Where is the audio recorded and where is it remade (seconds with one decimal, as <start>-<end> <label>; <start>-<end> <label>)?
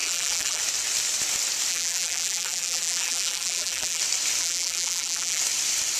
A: 0.0-0.6 remade; 0.6-1.7 recorded; 1.7-4.0 remade; 4.0-4.4 recorded; 4.4-5.4 remade; 5.4-6.0 recorded